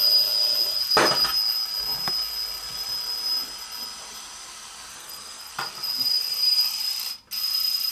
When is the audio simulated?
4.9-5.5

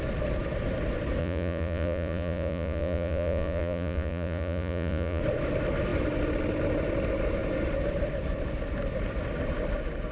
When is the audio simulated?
1.2-5.2

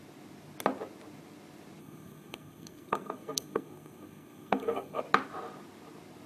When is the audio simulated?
1.8-5.0

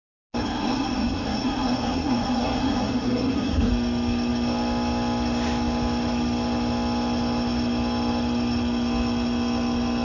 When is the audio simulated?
0.4-3.7